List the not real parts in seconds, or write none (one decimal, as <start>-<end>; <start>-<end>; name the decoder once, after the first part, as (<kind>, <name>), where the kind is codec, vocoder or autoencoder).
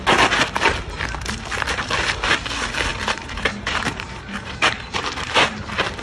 2.9-5.6 (vocoder, BigVGAN v2)